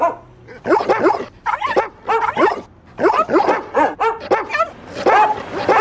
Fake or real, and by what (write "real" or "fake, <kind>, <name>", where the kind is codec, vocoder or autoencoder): real